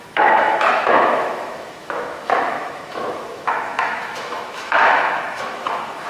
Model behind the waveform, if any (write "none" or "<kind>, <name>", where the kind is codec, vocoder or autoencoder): autoencoder, DAC-VAE